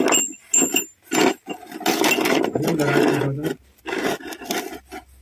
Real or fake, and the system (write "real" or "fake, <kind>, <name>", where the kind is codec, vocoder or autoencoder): real